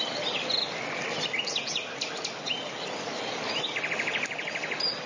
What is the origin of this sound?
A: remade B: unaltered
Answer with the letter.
B